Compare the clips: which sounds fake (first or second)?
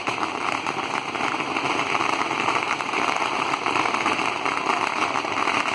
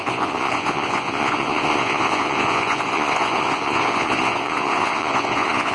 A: second